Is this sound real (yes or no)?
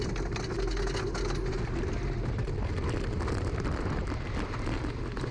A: yes